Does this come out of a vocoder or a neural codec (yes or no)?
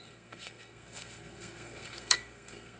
yes